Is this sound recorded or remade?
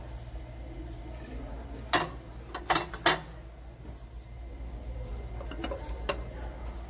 recorded